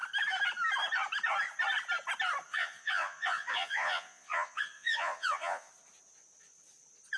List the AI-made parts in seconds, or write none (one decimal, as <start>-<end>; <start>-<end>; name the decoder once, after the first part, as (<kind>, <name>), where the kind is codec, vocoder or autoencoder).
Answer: 2.5-5.7 (vocoder, Vocos)